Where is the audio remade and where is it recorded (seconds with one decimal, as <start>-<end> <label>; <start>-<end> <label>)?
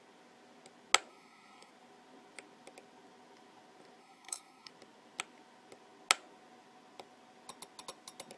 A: 0.0-1.1 recorded; 1.1-1.7 remade; 1.7-4.0 recorded; 4.0-4.7 remade; 4.7-8.4 recorded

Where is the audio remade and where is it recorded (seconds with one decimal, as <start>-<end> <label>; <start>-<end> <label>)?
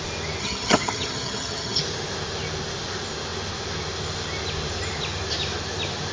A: 0.0-0.4 recorded; 0.4-1.8 remade; 1.8-6.1 recorded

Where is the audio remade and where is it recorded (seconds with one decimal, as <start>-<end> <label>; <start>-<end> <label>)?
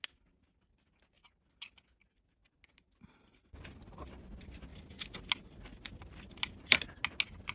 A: 0.0-7.5 recorded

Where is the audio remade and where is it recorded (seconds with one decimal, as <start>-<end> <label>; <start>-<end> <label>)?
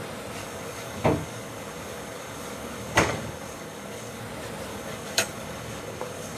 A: 0.0-0.4 recorded; 0.4-4.2 remade; 4.2-4.7 recorded; 4.7-6.4 remade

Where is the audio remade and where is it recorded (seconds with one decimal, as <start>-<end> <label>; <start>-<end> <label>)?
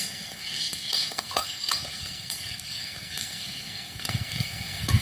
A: 0.0-5.0 remade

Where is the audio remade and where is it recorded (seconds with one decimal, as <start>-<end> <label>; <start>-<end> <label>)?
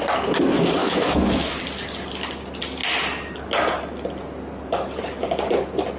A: 0.0-0.8 recorded; 0.8-1.6 remade; 1.6-6.0 recorded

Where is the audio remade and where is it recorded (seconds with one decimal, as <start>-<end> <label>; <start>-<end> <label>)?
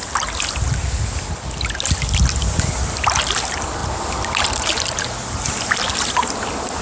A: 0.0-6.8 recorded